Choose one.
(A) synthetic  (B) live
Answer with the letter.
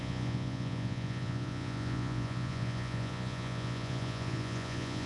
A